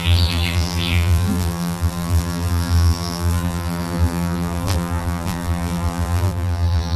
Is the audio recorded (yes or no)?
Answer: no